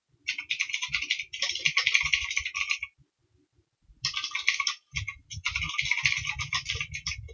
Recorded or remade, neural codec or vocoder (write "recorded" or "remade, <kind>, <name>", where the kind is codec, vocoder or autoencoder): recorded